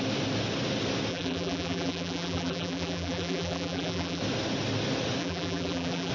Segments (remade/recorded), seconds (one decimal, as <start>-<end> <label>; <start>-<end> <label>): 0.0-1.1 recorded; 1.1-4.2 remade; 4.2-5.2 recorded; 5.2-6.1 remade